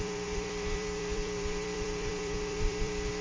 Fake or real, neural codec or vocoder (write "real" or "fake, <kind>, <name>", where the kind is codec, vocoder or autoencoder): fake, vocoder, BigVGAN v2